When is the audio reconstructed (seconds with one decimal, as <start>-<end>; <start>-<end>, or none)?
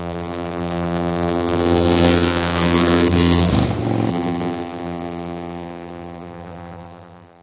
0.0-3.5; 4.1-7.4